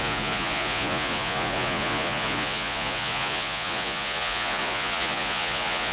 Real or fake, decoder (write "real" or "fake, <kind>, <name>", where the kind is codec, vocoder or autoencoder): fake, vocoder, Vocos